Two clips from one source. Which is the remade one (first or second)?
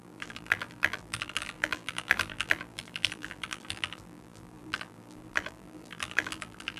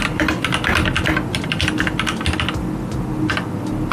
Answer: first